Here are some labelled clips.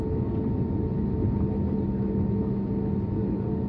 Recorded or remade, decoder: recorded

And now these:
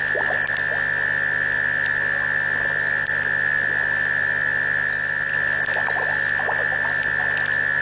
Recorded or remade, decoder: recorded